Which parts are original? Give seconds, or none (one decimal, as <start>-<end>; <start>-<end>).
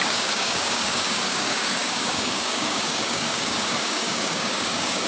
none